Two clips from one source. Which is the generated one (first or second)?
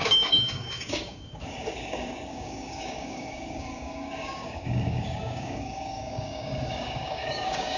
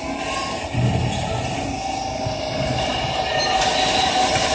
first